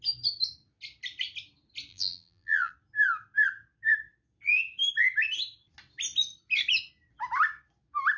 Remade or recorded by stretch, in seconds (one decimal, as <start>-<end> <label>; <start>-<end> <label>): 0.0-1.9 recorded; 1.9-2.7 remade; 2.7-8.2 recorded